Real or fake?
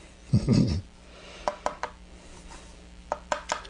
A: real